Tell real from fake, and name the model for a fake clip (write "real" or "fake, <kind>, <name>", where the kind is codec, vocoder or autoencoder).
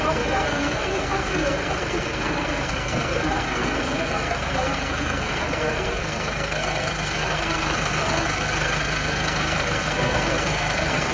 fake, codec, SNAC